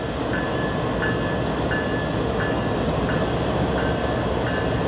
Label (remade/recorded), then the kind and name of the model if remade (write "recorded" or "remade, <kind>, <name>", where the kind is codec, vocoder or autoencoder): recorded